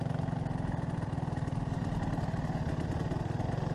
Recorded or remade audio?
recorded